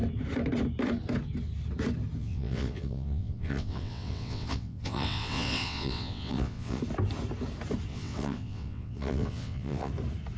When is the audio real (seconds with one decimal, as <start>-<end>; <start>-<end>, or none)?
0.0-2.2; 6.8-7.9; 9.9-10.4

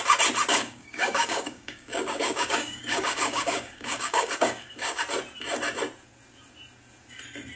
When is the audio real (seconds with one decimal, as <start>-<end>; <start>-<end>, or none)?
0.0-0.5; 5.0-7.6

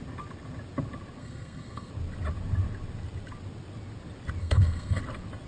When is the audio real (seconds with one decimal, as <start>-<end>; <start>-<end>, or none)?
0.0-1.2; 1.9-4.4; 5.0-5.5

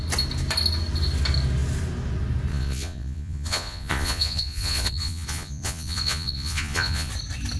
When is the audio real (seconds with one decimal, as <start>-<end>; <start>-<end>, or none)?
0.0-2.5; 7.1-7.6

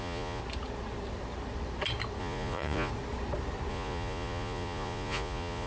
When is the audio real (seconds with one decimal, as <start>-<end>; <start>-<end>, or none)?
0.4-2.2; 2.9-3.7

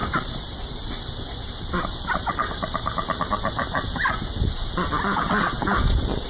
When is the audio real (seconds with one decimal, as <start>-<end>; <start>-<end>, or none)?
0.0-1.1